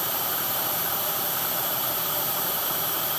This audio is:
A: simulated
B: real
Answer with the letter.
A